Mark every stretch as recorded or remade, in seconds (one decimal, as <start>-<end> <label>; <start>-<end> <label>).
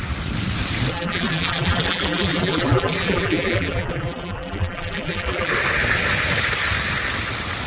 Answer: 0.0-0.9 recorded; 0.9-5.5 remade; 5.5-7.7 recorded